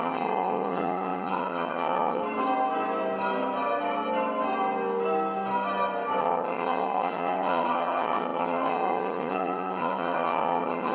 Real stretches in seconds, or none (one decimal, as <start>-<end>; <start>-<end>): 2.2-6.2